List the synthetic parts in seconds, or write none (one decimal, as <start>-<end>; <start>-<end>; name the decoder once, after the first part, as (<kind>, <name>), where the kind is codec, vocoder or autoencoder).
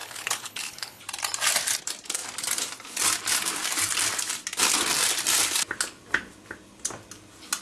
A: 0.0-1.0 (codec, HILCodec)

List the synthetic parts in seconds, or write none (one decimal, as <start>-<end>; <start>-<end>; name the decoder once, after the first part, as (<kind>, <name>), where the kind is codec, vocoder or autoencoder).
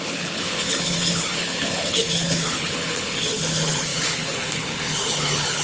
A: 0.0-5.6 (codec, HILCodec)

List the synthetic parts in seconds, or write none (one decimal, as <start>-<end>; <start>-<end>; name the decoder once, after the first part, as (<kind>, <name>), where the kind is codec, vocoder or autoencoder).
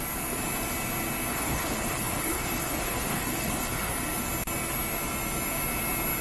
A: 1.3-3.9 (codec, HILCodec)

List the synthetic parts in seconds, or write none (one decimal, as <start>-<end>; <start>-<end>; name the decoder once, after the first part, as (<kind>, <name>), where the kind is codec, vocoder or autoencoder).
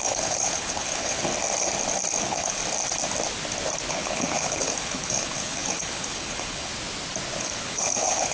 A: 0.0-1.3 (codec, HILCodec); 2.2-2.6; 3.9-6.7; 7.4-8.3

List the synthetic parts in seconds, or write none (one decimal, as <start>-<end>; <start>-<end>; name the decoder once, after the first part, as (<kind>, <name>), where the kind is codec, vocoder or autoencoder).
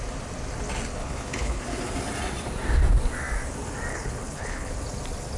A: 1.0-1.6 (codec, HILCodec); 3.9-4.7